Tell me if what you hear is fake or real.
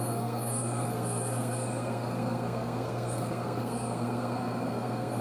fake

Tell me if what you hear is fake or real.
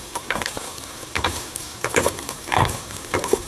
fake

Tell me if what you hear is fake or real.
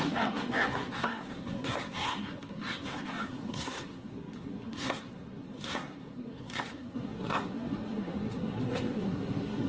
fake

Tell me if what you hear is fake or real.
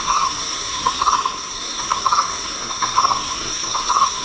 fake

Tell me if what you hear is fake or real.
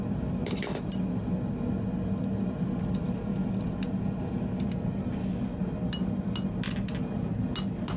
real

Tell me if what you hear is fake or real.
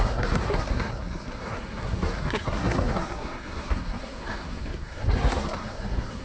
fake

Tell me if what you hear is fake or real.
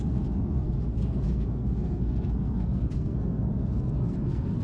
fake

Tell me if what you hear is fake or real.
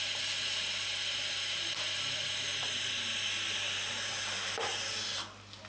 real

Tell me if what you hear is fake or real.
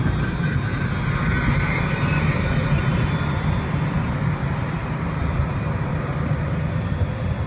real